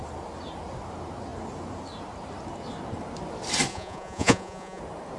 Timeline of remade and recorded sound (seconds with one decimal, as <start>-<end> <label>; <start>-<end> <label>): 0.0-3.7 recorded; 3.7-4.8 remade; 4.8-5.2 recorded